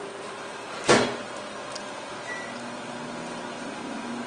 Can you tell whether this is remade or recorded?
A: recorded